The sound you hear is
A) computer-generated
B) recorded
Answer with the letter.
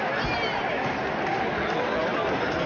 B